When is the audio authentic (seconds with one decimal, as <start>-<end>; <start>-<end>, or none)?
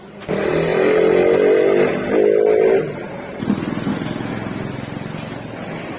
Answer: 0.0-6.0